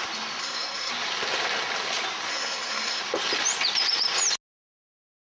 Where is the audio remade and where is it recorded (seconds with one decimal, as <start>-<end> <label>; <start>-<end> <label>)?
0.0-0.4 recorded; 0.4-0.9 remade; 0.9-2.3 recorded; 2.3-3.0 remade; 3.0-5.2 recorded